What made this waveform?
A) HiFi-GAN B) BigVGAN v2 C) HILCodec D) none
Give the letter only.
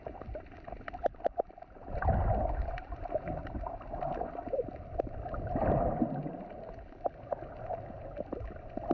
D